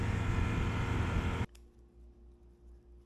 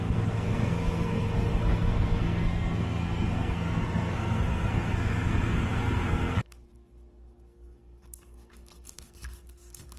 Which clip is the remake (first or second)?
second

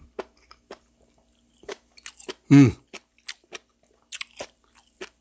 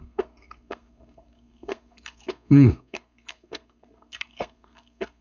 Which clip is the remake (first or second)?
second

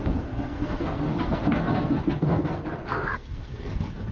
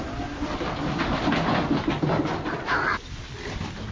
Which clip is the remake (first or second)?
first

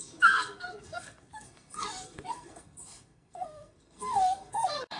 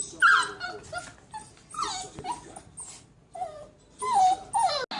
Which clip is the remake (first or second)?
first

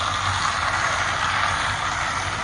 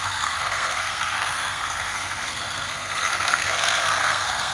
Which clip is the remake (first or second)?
second